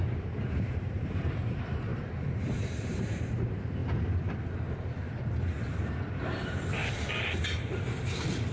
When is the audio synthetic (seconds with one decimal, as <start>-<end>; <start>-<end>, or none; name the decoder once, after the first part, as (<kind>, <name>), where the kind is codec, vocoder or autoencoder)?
0.0-1.9 (vocoder, BigVGAN v2); 2.4-3.8; 6.1-6.8; 7.6-8.5